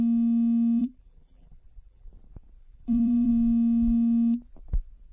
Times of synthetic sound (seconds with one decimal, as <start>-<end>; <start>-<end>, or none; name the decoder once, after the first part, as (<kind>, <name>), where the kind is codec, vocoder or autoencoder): 0.8-2.1 (vocoder, BigVGAN v2); 2.6-3.3